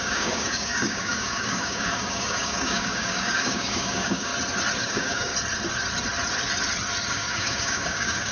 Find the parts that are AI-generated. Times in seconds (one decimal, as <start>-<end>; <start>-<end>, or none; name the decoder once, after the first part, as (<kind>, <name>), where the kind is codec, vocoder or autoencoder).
0.0-4.3 (codec, DAC); 4.8-5.3; 7.1-8.3

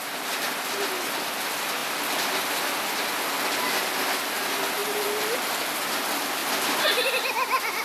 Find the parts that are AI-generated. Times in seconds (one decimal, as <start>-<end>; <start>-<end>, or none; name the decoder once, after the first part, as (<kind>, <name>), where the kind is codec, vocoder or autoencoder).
none

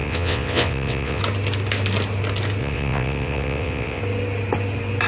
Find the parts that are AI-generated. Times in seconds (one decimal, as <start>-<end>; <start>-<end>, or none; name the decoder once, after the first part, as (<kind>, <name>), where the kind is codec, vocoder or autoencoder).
0.0-1.2 (vocoder, WaveNeXt); 2.6-4.0

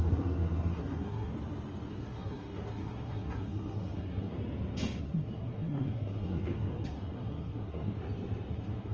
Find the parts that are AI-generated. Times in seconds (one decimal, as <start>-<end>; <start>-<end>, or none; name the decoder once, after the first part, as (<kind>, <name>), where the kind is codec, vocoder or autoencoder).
0.0-1.3 (codec, SNAC); 1.9-4.3; 5.0-8.0; 8.5-8.9

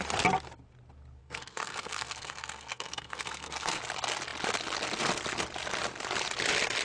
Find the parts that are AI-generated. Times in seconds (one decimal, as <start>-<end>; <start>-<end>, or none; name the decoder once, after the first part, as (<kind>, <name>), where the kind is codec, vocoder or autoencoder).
1.2-3.8 (codec, SNAC)

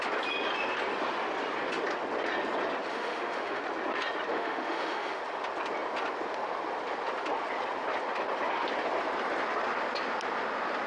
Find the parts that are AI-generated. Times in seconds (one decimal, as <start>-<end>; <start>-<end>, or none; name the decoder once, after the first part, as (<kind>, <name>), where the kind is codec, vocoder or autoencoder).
2.9-3.6 (autoencoder, DAC-VAE); 4.3-5.2

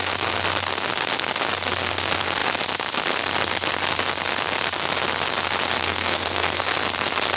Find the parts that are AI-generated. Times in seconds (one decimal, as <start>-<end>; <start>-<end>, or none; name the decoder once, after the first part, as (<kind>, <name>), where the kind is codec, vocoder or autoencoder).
5.8-6.6 (codec, SNAC)